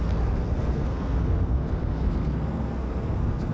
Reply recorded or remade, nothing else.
remade